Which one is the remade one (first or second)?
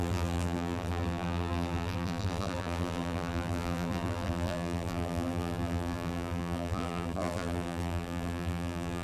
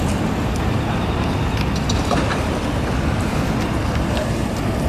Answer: first